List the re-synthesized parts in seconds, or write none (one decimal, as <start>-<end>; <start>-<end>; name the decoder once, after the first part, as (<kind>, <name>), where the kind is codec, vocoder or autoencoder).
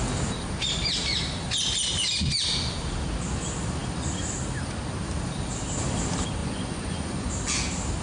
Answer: 6.4-7.3 (vocoder, Vocos)